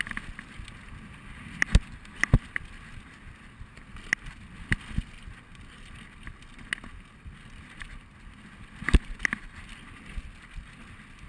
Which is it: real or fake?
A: real